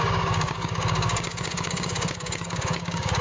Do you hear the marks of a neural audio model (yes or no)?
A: yes